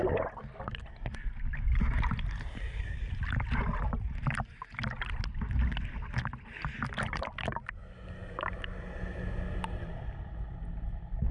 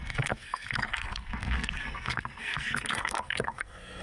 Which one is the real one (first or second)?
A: first